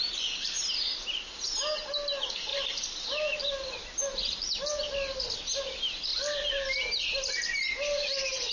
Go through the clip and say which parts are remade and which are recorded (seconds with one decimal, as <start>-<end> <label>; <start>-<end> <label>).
0.0-8.5 recorded